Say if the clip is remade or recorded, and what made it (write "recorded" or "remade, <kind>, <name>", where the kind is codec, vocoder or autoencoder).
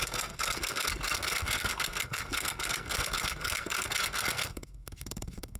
remade, codec, SNAC